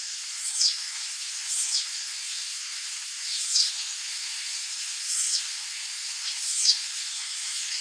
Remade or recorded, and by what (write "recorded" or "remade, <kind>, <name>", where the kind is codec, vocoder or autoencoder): remade, codec, SNAC